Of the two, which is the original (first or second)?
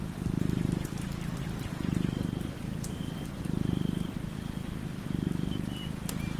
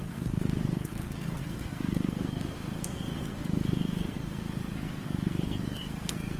first